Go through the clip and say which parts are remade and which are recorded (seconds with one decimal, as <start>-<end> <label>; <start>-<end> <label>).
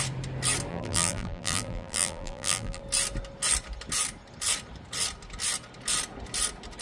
0.0-0.7 recorded; 0.7-2.8 remade; 2.8-6.8 recorded